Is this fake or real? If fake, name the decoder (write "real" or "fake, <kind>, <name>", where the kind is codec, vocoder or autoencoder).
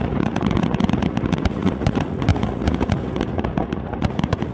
fake, vocoder, Vocos